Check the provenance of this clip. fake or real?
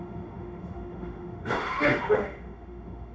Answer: fake